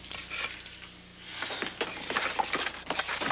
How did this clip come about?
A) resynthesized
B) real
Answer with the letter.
B